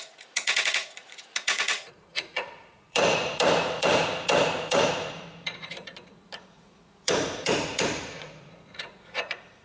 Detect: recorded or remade remade